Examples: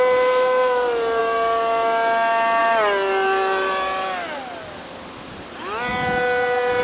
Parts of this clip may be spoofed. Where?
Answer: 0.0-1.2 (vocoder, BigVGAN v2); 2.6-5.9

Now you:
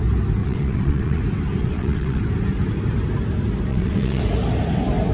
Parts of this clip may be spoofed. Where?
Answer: 0.4-1.2 (vocoder, WaveNeXt); 1.6-2.2; 3.7-4.2

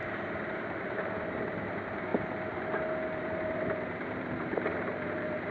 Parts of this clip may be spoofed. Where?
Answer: 0.0-2.1 (vocoder, BigVGAN v2); 3.2-5.5

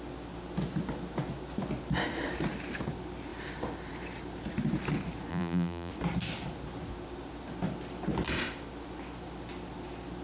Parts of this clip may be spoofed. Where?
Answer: 5.3-5.9 (vocoder, BigVGAN v2)

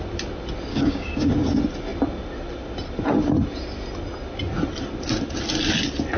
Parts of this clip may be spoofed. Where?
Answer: 0.7-1.3 (codec, DAC)

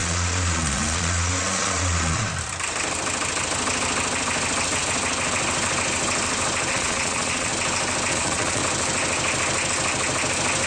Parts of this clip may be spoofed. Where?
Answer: 0.0-2.3 (vocoder, Vocos); 6.7-7.5; 8.1-8.6

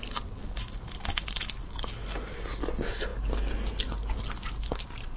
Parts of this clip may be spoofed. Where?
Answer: none

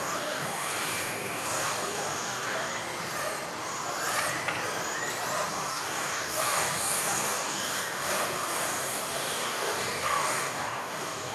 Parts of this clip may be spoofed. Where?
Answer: 0.0-2.7 (codec, DAC); 5.5-11.3